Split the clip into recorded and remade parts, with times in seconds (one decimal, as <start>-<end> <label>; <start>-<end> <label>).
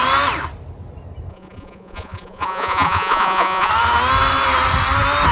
0.0-1.3 recorded; 1.3-3.7 remade; 3.7-5.3 recorded